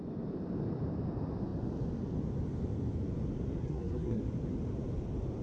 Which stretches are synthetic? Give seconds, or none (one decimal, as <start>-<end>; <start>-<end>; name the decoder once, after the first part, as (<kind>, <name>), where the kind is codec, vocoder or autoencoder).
3.6-4.2 (codec, SNAC)